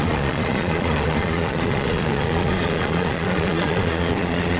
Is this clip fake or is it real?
fake